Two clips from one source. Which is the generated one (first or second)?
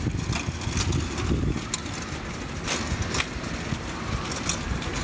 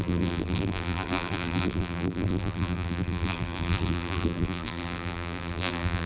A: second